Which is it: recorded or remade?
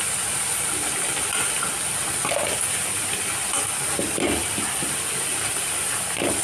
recorded